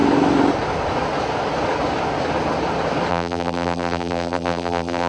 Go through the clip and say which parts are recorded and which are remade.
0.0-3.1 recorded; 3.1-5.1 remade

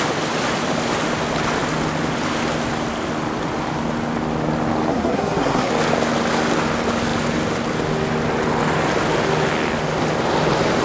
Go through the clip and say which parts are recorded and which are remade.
0.0-4.9 recorded; 4.9-5.7 remade; 5.7-10.8 recorded

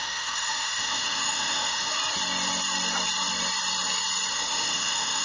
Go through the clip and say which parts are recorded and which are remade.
0.0-2.0 remade; 2.0-4.3 recorded; 4.3-5.2 remade

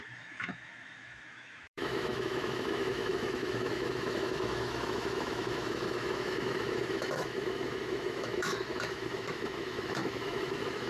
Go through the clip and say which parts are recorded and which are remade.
0.0-10.9 remade

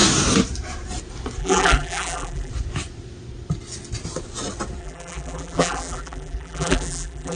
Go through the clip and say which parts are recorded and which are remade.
0.0-1.4 recorded; 1.4-2.5 remade; 2.5-4.8 recorded; 4.8-7.4 remade